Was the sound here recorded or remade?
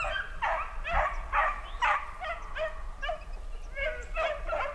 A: recorded